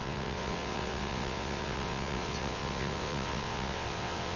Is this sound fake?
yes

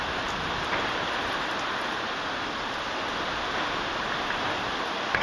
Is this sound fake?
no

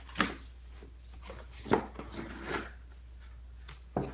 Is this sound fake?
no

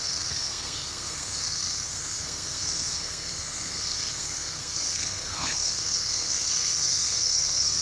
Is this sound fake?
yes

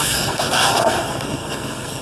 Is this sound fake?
yes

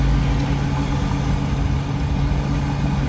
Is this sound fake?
no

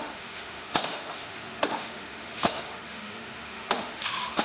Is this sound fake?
yes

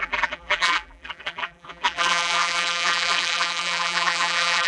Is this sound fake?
yes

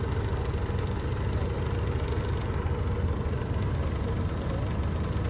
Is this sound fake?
no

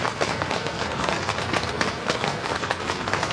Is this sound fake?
yes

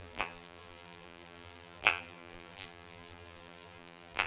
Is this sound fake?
yes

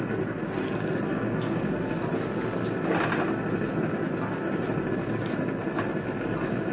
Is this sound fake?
no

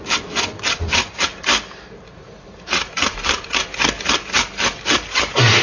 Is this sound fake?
no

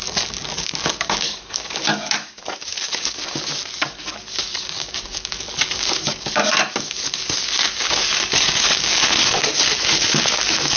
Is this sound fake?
yes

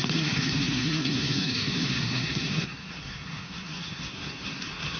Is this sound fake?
yes